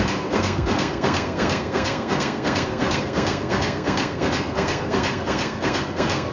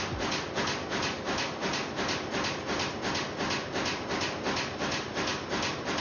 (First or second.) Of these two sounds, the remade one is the first